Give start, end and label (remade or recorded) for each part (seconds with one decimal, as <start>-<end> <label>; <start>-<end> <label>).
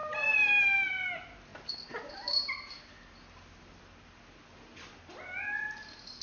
0.0-6.2 recorded